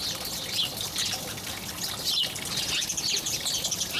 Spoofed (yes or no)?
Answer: no